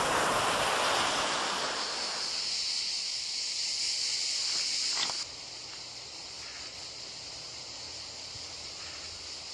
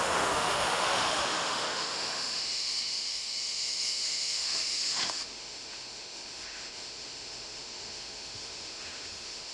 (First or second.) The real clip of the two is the first